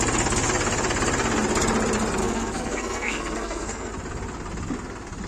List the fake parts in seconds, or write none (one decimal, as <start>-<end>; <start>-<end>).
2.2-3.9